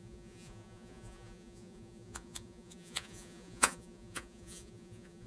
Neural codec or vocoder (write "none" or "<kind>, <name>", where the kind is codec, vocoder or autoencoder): vocoder, Vocos